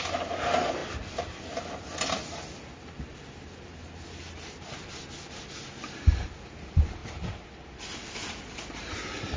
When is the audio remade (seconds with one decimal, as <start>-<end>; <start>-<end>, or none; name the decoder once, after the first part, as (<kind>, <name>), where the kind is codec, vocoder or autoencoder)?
none